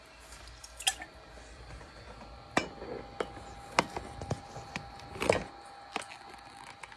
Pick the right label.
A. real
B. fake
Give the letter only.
A